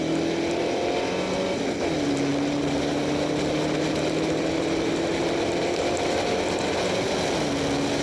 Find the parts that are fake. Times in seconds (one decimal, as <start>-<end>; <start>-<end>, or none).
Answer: none